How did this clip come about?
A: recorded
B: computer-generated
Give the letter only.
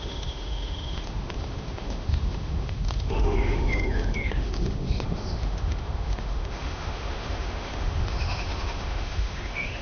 B